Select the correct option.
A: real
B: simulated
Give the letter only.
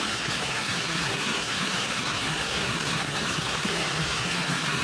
B